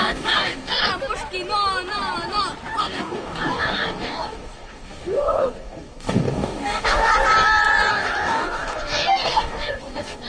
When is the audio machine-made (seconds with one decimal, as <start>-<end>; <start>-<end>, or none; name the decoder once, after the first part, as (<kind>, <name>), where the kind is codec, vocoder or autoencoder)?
0.0-0.9 (codec, DAC); 2.8-7.1; 7.9-10.3